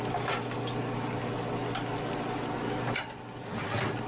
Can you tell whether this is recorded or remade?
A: recorded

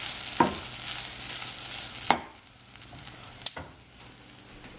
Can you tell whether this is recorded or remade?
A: recorded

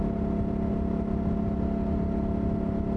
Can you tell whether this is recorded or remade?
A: recorded